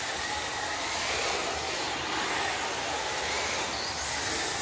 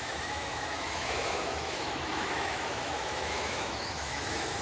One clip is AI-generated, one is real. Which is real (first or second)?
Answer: first